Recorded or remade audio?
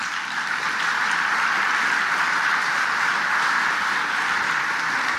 recorded